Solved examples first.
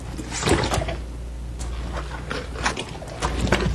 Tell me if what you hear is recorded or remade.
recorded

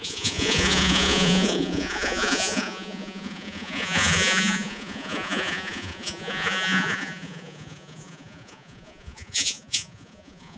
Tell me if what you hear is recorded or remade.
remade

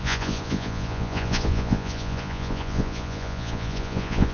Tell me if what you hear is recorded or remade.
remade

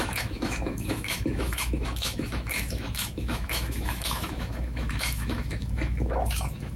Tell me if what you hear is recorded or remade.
remade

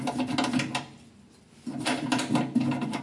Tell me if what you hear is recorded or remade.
recorded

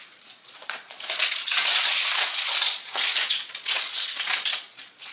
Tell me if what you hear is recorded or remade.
remade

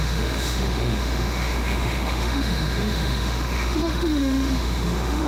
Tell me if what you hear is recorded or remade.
remade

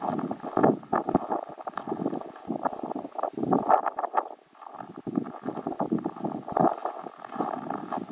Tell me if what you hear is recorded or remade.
recorded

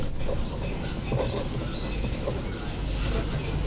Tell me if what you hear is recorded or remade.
recorded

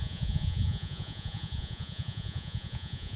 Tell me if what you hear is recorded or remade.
remade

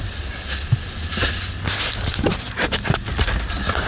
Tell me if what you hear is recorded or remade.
recorded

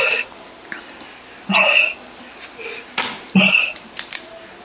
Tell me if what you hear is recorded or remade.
recorded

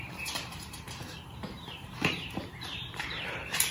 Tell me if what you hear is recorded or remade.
remade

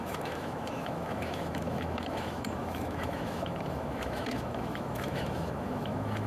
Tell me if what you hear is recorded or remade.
remade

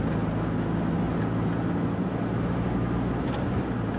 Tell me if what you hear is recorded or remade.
recorded